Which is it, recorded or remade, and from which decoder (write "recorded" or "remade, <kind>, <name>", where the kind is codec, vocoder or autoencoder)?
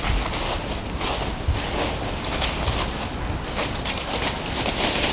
recorded